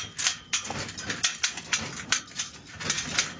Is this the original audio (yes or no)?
yes